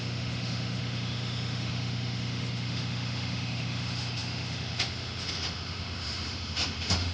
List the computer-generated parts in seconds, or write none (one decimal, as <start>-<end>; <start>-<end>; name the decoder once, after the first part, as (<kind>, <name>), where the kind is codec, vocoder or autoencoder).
0.0-7.1 (autoencoder, DAC-VAE)